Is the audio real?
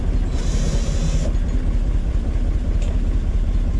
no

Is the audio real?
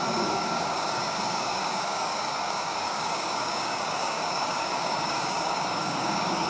no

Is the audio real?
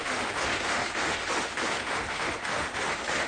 no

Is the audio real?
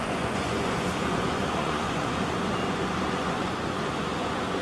no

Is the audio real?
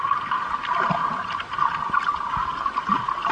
yes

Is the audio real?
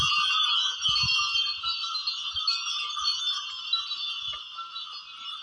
yes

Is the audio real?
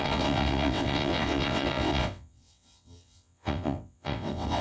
no